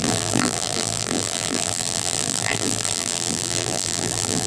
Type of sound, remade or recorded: remade